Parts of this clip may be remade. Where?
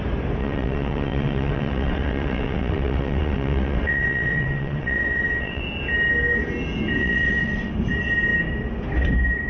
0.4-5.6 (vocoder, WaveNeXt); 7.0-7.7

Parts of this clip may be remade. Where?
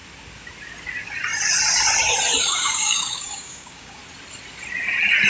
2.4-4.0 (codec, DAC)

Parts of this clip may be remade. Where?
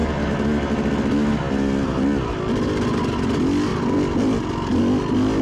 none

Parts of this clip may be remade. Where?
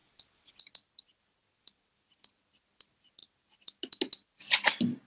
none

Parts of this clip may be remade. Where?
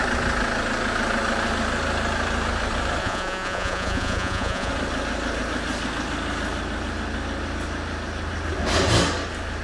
3.0-4.7 (vocoder, Vocos)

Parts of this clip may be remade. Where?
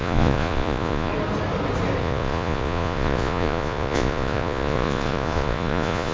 0.0-1.1 (vocoder, Vocos); 2.0-6.1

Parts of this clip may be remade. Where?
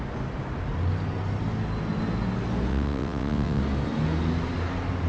2.7-3.6 (vocoder, WaveNeXt)